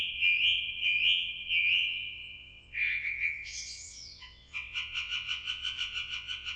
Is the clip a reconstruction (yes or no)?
yes